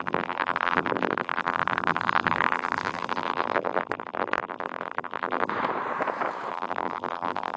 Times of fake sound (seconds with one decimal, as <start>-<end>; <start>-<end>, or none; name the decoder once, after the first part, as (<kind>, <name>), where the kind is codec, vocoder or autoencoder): 0.0-5.5 (vocoder, BigVGAN v2); 6.5-7.6